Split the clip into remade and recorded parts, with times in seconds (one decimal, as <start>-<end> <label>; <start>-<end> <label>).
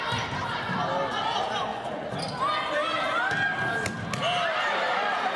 0.0-1.7 recorded; 1.7-2.2 remade; 2.2-5.4 recorded